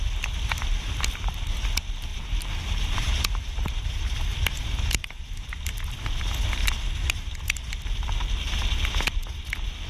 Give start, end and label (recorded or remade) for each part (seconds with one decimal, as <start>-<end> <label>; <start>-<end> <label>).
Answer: 0.0-2.1 recorded; 2.1-5.2 remade; 5.2-9.9 recorded